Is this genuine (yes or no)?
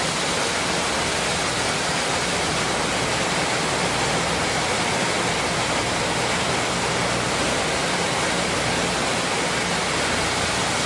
yes